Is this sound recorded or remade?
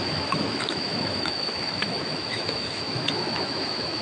remade